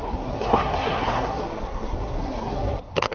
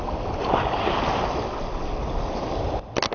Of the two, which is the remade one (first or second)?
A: first